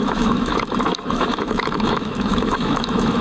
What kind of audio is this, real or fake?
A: fake